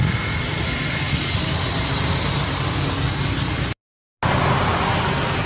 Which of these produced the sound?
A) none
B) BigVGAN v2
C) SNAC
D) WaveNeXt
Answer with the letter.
A